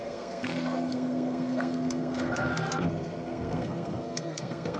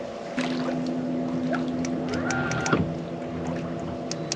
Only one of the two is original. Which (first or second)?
second